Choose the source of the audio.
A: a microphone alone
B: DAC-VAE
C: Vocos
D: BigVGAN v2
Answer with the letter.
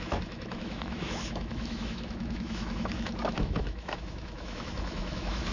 B